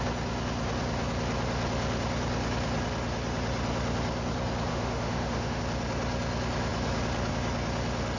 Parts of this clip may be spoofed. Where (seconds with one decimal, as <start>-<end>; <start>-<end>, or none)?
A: 4.7-5.6

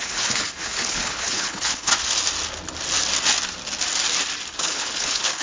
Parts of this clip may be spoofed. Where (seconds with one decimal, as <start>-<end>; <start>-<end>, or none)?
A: 0.0-1.9; 4.6-5.4